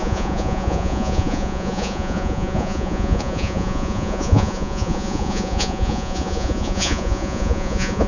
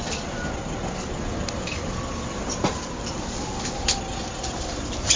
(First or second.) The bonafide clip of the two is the second